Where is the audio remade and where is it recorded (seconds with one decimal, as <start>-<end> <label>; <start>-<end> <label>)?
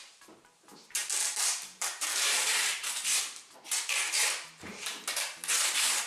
0.0-6.1 remade